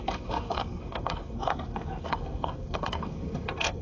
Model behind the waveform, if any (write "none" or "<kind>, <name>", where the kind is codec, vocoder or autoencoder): codec, SNAC